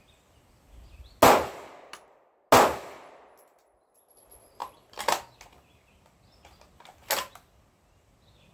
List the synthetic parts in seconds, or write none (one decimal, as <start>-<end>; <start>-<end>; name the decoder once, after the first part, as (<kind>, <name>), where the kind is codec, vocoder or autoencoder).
none